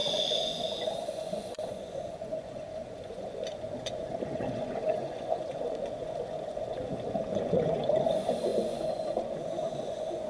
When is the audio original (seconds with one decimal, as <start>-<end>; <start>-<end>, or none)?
none